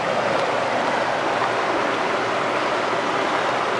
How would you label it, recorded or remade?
recorded